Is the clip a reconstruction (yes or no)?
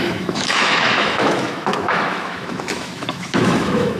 yes